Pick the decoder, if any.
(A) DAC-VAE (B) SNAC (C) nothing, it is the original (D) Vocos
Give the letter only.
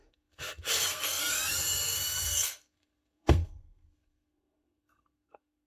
B